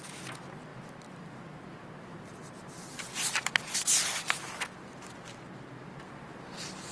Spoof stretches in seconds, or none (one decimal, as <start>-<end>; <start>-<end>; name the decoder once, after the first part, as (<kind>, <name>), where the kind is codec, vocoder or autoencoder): none

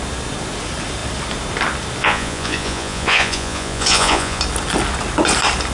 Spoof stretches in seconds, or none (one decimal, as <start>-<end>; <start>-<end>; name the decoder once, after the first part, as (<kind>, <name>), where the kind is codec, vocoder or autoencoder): 2.0-4.4 (vocoder, Vocos)

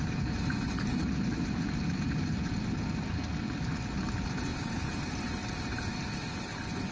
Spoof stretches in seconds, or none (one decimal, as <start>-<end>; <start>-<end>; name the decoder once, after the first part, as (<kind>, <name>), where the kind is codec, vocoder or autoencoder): 0.0-2.4 (vocoder, BigVGAN v2); 4.0-6.9

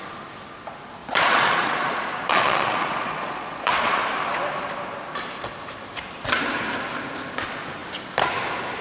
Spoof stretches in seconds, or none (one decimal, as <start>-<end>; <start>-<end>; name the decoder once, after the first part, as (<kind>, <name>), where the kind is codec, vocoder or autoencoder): 1.0-4.0 (vocoder, Vocos)